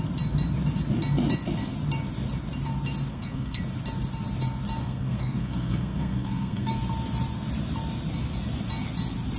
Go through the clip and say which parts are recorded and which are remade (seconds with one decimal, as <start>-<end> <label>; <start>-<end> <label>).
0.0-3.1 recorded; 3.1-3.6 remade; 3.6-4.8 recorded; 4.8-6.7 remade; 6.7-9.4 recorded